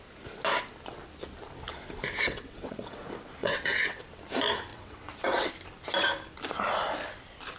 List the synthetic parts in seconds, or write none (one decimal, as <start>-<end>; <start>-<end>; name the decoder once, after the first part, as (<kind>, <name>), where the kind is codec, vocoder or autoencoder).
2.2-3.0 (vocoder, WaveNeXt); 3.4-4.0; 4.7-5.5